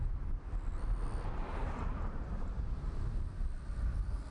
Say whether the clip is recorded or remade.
remade